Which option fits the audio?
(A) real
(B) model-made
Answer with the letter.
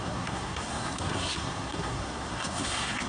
B